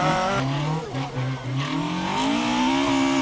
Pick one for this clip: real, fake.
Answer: real